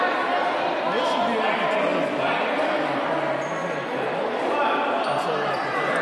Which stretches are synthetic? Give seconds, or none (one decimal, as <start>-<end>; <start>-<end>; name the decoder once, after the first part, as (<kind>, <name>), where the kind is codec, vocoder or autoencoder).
none